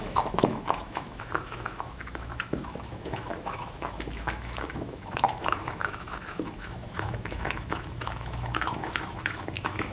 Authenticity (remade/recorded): remade